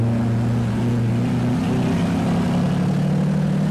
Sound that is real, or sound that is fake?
real